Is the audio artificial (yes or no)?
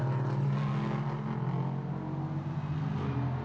no